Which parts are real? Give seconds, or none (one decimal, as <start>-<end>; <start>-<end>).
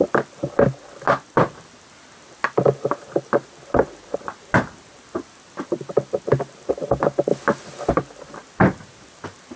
0.0-9.6